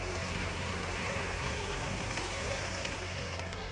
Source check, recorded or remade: remade